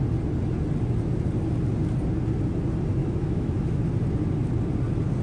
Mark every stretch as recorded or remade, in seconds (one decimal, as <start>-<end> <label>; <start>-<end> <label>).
0.0-3.0 recorded; 3.0-3.8 remade; 3.8-5.2 recorded